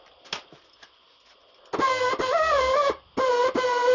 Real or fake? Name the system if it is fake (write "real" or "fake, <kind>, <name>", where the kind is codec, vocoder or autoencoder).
real